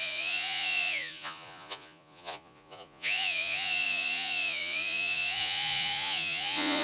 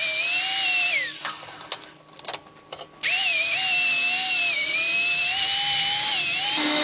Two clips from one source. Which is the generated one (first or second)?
first